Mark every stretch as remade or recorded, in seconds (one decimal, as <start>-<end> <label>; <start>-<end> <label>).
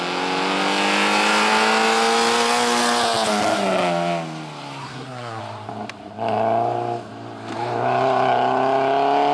0.0-4.8 recorded; 4.8-5.4 remade; 5.4-9.3 recorded